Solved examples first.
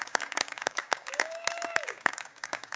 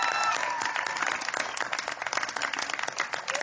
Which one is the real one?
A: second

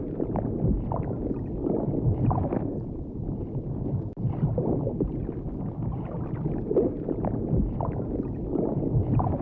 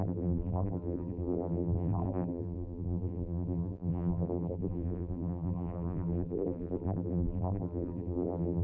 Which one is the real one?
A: first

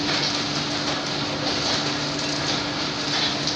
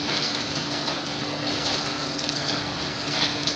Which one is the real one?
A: first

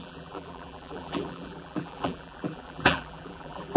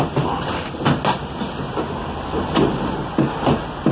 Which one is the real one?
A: second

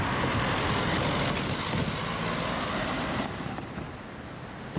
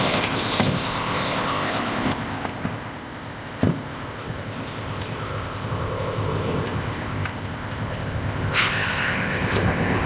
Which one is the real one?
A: first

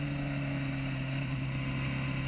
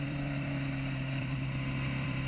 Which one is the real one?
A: first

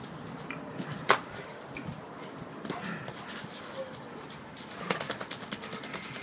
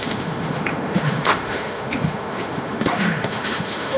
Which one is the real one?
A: first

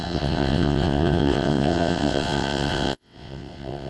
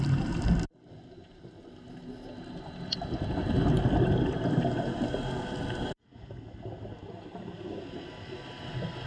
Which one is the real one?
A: second